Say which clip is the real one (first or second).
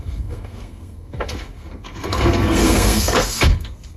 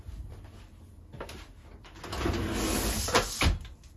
second